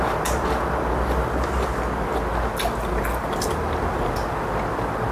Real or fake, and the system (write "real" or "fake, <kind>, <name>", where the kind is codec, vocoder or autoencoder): real